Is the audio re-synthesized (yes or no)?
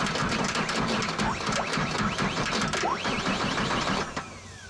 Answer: no